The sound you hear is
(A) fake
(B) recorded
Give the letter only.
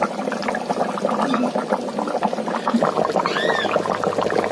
B